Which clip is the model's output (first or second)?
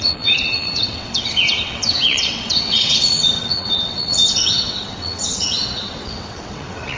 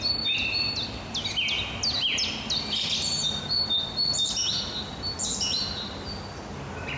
first